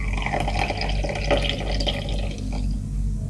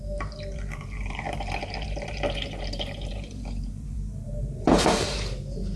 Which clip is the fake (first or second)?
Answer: second